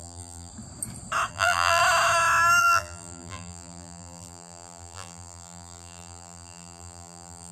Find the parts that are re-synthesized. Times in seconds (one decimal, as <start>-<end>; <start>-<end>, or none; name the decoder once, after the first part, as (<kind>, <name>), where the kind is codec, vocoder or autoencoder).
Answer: 0.0-0.5 (vocoder, BigVGAN v2); 1.3-1.8; 2.6-7.5